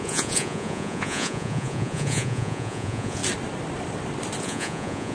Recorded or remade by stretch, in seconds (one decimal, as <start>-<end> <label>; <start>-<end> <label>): 0.0-3.2 remade; 3.2-4.4 recorded; 4.4-5.1 remade